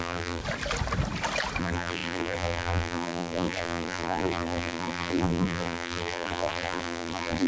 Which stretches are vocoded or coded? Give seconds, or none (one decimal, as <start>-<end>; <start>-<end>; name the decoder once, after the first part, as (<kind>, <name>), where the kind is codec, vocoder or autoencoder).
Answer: 0.0-0.4 (vocoder, BigVGAN v2); 1.6-7.5